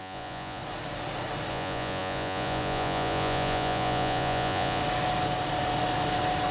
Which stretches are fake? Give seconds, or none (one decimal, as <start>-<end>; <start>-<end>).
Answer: 0.0-0.6; 1.5-4.8